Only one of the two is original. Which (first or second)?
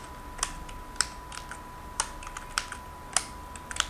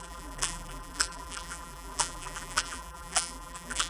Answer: first